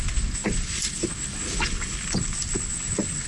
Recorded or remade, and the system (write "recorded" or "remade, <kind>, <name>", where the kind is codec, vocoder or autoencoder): recorded